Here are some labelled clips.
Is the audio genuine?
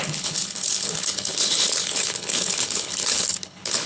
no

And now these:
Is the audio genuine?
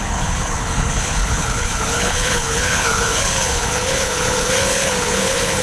no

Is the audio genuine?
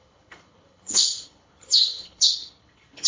no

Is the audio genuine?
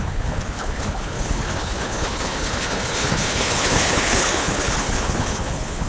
no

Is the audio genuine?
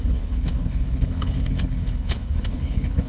no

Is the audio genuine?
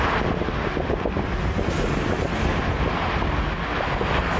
yes